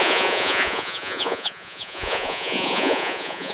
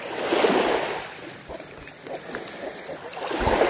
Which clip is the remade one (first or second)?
first